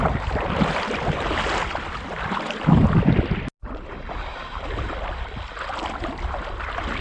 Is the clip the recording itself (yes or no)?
yes